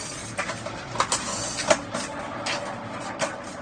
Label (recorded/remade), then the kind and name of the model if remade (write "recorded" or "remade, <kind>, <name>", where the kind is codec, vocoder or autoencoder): recorded